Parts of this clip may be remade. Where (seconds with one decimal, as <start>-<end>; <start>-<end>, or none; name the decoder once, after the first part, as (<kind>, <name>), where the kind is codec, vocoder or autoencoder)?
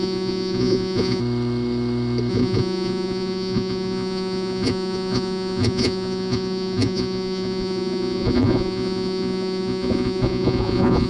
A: 0.0-1.2 (vocoder, Vocos); 2.3-11.1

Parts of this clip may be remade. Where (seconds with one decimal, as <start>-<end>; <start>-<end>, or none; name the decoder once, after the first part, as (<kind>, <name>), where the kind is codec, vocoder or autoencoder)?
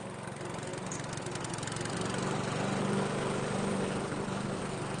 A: 0.0-0.7 (vocoder, BigVGAN v2); 1.9-5.0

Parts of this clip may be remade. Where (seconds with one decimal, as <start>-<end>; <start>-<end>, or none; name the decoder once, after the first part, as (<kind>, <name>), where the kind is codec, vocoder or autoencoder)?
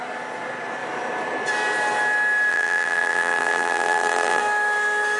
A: 2.5-4.4 (vocoder, BigVGAN v2)